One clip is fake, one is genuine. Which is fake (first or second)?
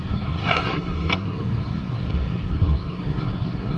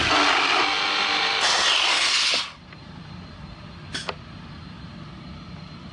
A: first